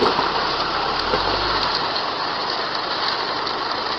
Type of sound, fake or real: real